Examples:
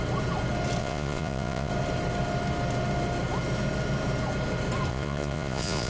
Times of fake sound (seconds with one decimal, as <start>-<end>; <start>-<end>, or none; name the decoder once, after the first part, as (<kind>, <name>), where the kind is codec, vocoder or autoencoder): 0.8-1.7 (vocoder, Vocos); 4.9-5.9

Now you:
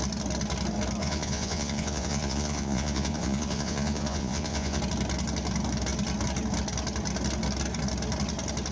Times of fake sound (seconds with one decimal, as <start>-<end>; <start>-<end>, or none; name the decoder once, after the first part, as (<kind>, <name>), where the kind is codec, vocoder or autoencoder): 1.0-4.8 (vocoder, Vocos)

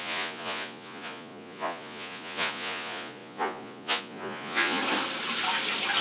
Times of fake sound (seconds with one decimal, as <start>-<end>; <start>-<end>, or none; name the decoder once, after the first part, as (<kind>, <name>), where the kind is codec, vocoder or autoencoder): 0.0-4.8 (vocoder, Vocos)